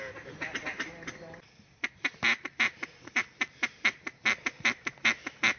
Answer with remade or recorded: recorded